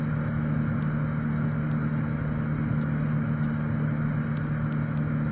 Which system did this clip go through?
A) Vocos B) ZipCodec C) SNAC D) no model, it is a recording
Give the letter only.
D